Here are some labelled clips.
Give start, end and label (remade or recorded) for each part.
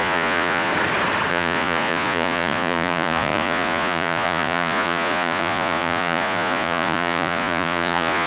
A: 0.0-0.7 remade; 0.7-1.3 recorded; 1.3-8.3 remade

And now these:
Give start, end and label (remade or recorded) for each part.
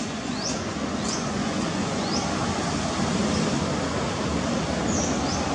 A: 0.0-2.1 remade; 2.1-5.5 recorded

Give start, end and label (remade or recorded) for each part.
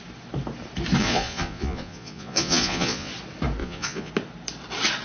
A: 0.0-1.0 recorded; 1.0-3.1 remade; 3.1-3.6 recorded; 3.6-4.1 remade; 4.1-5.0 recorded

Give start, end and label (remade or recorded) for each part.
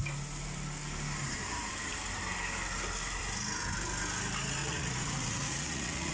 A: 0.0-4.6 recorded; 4.6-6.1 remade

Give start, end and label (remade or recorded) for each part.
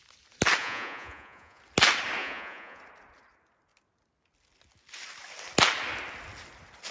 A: 0.0-0.6 recorded; 0.6-1.6 remade; 1.6-2.2 recorded; 2.2-2.8 remade; 2.8-6.9 recorded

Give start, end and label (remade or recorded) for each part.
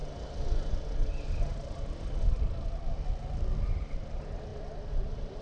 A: 0.0-5.4 recorded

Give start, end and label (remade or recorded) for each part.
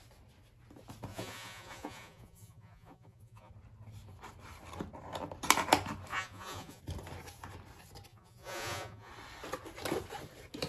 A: 0.0-1.1 recorded; 1.1-3.5 remade; 3.5-6.1 recorded; 6.1-6.8 remade; 6.8-8.1 recorded; 8.1-9.1 remade; 9.1-10.7 recorded